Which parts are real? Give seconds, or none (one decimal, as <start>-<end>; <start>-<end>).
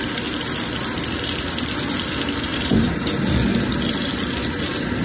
0.0-2.5; 3.3-5.0